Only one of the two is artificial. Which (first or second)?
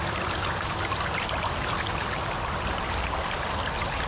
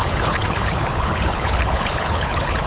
second